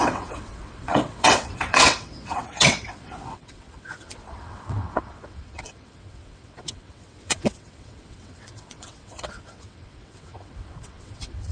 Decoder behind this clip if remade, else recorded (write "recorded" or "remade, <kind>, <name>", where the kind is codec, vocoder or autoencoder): remade, vocoder, WaveNeXt